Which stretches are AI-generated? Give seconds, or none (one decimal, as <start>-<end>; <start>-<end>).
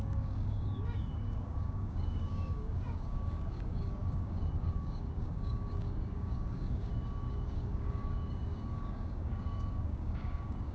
0.0-10.7